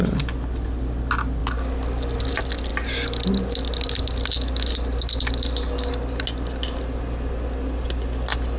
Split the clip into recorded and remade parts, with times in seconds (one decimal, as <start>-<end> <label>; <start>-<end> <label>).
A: 0.0-8.6 recorded